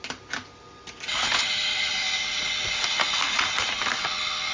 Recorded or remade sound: recorded